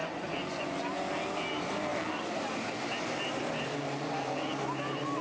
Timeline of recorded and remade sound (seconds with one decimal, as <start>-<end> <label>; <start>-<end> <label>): 0.0-1.0 remade; 1.0-5.2 recorded